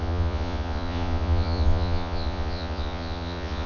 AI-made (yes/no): yes